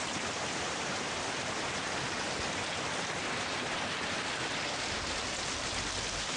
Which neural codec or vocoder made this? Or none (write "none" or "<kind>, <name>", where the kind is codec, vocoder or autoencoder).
none